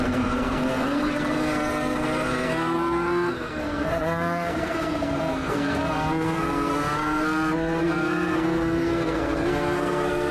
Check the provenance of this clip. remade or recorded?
remade